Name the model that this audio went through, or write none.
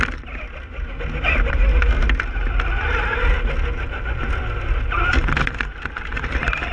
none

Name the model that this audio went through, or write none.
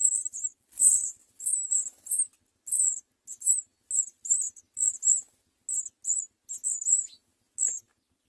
none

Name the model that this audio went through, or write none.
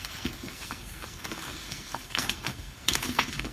codec, SNAC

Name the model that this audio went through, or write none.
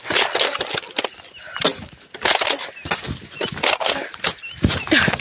none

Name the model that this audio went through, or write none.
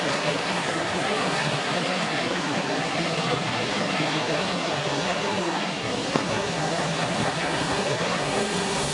codec, SNAC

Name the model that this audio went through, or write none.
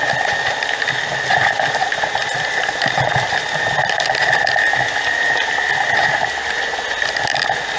none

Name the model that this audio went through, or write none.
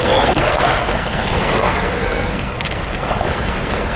codec, SNAC